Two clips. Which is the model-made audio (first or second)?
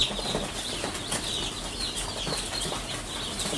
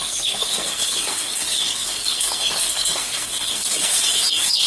second